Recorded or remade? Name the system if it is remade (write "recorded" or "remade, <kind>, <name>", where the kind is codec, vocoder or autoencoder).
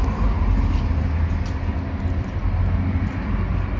recorded